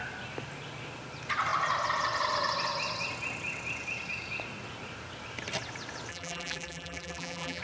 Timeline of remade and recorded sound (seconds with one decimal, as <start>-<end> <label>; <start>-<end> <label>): 0.0-6.1 recorded; 6.1-7.6 remade